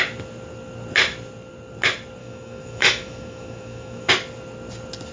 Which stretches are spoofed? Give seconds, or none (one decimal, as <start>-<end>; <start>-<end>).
2.2-4.1